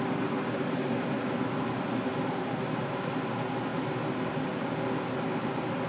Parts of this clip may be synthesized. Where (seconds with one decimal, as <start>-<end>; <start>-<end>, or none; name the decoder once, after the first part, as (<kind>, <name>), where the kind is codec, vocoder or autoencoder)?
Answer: 2.1-3.0 (vocoder, BigVGAN v2)